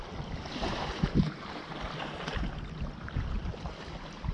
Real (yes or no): no